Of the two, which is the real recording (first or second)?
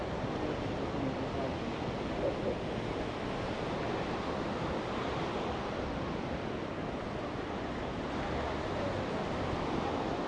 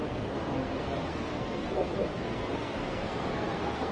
first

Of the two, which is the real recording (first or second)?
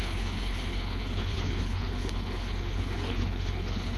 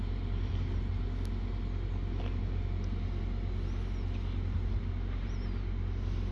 second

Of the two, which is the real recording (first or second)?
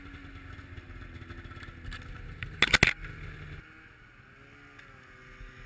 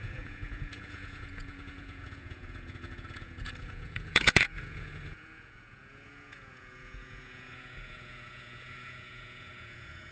first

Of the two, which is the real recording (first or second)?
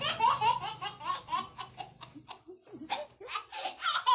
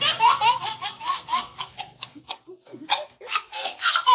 first